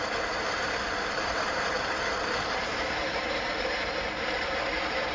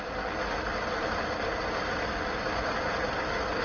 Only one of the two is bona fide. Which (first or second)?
second